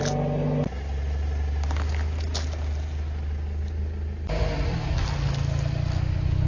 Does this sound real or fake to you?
real